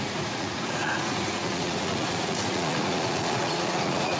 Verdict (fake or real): fake